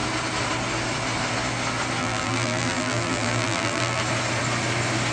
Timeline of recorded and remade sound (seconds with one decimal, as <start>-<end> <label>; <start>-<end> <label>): 0.0-2.0 recorded; 2.0-4.0 remade; 4.0-5.1 recorded